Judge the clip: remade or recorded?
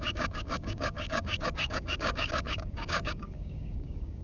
remade